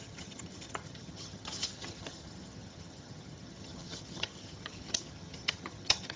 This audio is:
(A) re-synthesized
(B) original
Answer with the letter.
A